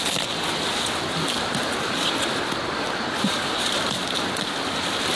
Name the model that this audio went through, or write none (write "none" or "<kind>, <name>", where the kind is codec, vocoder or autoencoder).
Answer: none